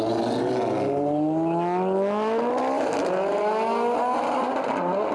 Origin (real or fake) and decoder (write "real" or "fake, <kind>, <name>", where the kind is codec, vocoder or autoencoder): real